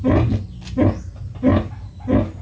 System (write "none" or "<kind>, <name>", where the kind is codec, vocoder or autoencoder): none